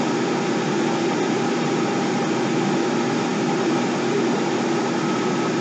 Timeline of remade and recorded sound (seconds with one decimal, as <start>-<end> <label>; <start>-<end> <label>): 0.0-5.6 recorded

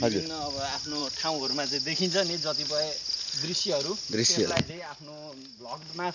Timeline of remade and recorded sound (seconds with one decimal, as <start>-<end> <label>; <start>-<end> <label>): 0.0-6.1 recorded

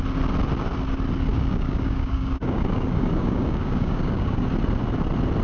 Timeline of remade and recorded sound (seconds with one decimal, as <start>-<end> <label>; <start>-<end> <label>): 0.0-1.3 recorded; 1.3-4.5 remade; 4.5-5.4 recorded

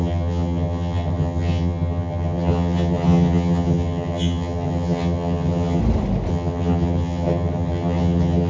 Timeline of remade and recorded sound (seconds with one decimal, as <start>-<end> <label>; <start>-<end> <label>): 0.0-5.8 remade; 5.8-6.3 recorded; 6.3-8.5 remade

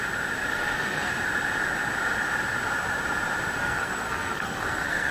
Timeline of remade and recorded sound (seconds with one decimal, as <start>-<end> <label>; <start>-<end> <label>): 0.0-0.5 recorded; 0.5-1.1 remade; 1.1-3.6 recorded; 3.6-5.1 remade

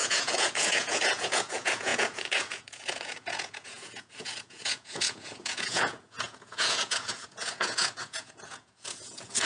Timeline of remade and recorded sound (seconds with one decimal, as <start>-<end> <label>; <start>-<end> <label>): 0.0-9.5 remade

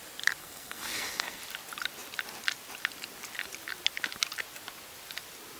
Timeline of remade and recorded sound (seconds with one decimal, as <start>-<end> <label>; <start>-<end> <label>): 0.0-0.4 recorded; 0.4-1.4 remade; 1.4-5.6 recorded